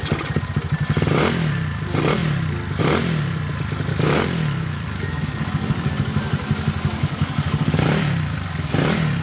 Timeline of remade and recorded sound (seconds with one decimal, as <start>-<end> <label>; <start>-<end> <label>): 0.0-3.9 recorded; 3.9-5.9 remade; 5.9-7.0 recorded; 7.0-7.8 remade; 7.8-9.2 recorded